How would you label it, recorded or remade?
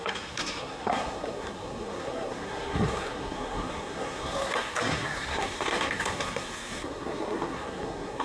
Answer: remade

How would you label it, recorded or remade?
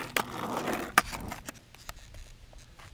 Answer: recorded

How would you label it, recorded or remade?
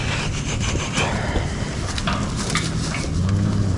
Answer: recorded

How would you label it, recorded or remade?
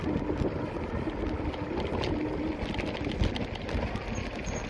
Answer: recorded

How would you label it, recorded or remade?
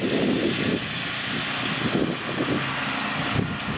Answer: recorded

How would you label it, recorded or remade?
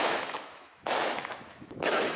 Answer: remade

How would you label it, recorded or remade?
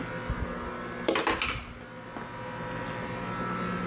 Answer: recorded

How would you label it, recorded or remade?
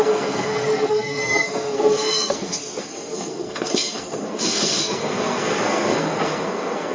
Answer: remade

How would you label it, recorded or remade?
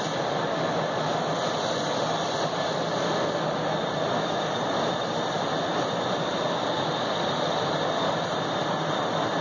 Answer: remade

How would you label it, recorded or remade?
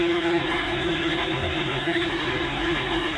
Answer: remade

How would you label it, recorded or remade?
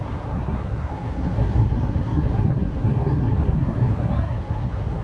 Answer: remade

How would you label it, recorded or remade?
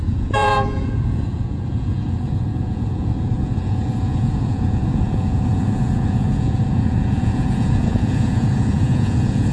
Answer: remade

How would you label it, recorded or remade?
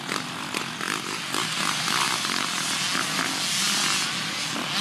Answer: recorded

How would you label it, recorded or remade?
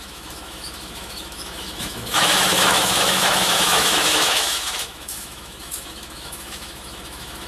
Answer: remade